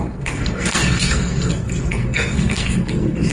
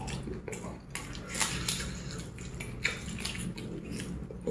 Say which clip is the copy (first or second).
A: first